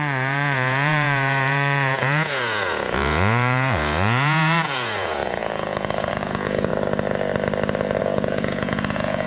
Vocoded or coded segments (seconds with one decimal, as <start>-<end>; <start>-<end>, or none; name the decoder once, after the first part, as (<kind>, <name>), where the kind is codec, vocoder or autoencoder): 0.0-6.7 (vocoder, Vocos); 8.0-9.3